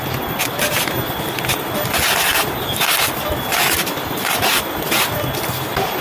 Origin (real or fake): real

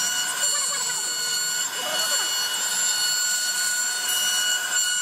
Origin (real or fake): real